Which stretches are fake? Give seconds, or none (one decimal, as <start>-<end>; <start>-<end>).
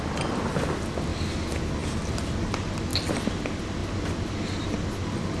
none